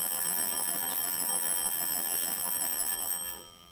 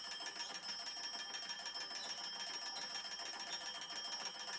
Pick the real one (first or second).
second